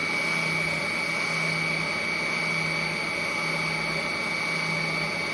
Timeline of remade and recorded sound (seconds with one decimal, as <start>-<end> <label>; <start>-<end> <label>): 0.0-5.3 recorded